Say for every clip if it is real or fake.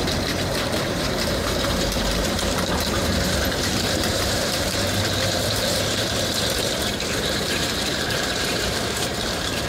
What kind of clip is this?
fake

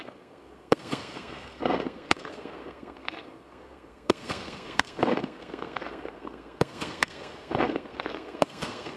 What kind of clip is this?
fake